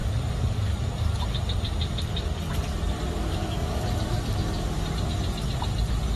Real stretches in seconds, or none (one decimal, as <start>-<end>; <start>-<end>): 0.0-3.2; 3.8-6.2